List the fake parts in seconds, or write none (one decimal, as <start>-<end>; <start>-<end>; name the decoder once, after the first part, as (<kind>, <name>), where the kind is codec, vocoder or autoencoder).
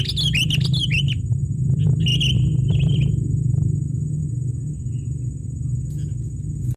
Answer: none